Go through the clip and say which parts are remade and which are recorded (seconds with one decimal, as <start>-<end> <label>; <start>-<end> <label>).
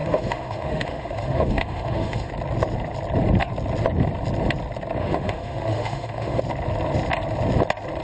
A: 0.0-2.3 remade; 2.3-5.0 recorded; 5.0-6.4 remade; 6.4-8.0 recorded